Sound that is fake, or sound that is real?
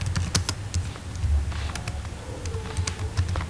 real